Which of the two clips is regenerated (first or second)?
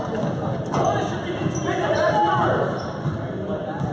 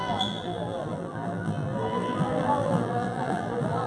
second